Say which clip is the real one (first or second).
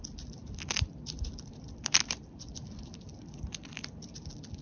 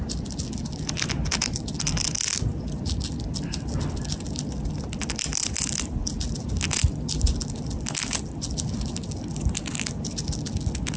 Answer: second